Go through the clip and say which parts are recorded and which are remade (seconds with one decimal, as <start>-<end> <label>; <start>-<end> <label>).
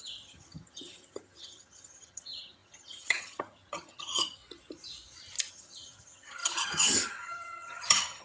0.0-4.4 remade; 4.4-5.5 recorded; 5.5-8.2 remade